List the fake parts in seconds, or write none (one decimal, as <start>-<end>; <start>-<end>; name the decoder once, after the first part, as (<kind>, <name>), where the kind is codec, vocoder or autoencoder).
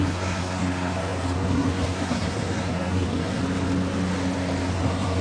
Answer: 0.0-3.4 (codec, SNAC); 4.7-5.2